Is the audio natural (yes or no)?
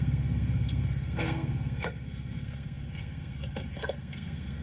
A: no